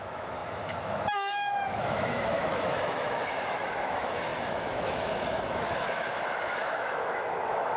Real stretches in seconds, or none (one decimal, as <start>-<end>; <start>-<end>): none